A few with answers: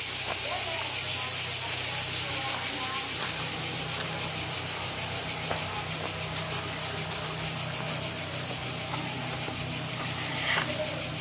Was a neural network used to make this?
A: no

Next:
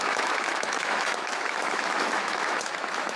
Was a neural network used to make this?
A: yes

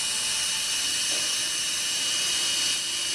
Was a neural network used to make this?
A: no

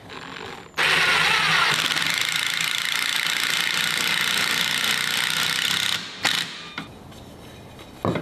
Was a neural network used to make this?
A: no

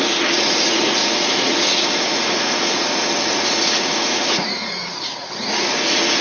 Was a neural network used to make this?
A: yes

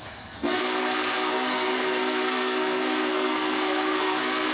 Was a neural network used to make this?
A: yes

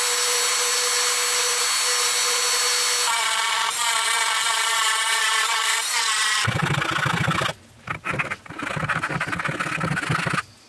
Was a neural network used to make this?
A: no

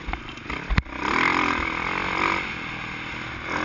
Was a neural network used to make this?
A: no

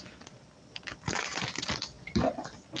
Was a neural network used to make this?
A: no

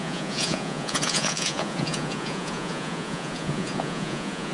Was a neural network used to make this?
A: yes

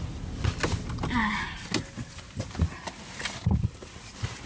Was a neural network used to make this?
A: no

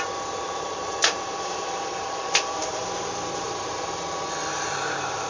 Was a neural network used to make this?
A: yes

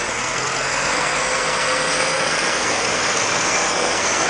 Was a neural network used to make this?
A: yes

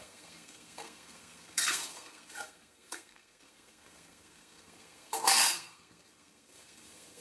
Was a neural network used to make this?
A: yes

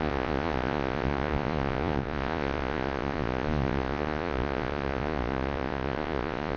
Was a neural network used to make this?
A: yes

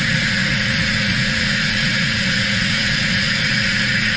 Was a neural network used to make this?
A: yes